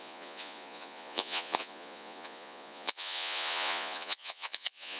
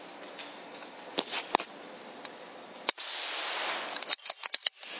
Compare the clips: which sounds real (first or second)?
second